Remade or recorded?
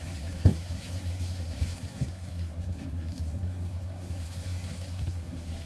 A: remade